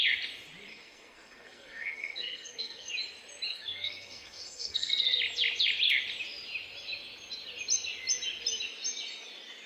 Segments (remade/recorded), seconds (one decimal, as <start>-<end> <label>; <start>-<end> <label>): 0.0-0.7 recorded; 0.7-2.9 remade; 2.9-3.5 recorded; 3.5-4.9 remade; 4.9-9.7 recorded

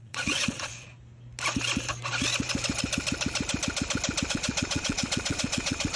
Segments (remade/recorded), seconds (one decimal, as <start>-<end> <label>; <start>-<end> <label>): 0.0-0.7 remade; 0.7-4.3 recorded; 4.3-6.0 remade

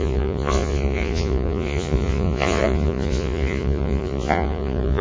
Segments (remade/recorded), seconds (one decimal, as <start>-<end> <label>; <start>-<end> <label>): 0.0-5.0 remade

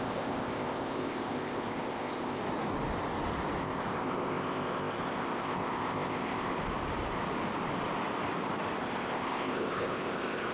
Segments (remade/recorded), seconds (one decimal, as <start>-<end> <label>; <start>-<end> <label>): 0.0-2.4 remade; 2.4-3.6 recorded; 3.6-6.5 remade; 6.5-8.8 recorded; 8.8-10.5 remade

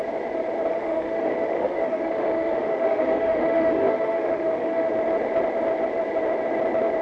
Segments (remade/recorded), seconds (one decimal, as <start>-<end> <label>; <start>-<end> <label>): 0.0-0.7 recorded; 0.7-4.9 remade; 4.9-7.0 recorded

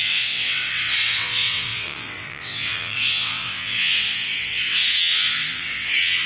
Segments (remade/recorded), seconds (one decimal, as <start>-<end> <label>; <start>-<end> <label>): 0.0-6.3 remade

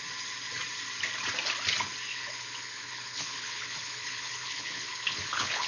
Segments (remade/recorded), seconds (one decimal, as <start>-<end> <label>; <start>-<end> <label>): 0.0-2.1 recorded; 2.1-5.7 remade